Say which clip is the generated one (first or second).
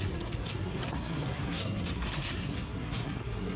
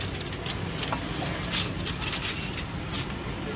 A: first